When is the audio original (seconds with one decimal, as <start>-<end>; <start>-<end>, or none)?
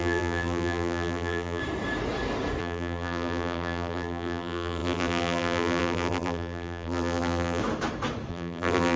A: 1.6-2.6; 7.6-8.3